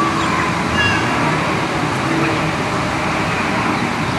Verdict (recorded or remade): recorded